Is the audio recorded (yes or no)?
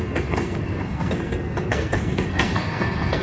no